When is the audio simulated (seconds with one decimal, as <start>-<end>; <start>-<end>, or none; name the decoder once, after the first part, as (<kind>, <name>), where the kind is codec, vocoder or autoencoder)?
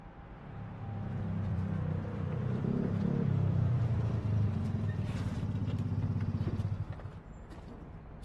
1.5-3.9 (vocoder, BigVGAN v2)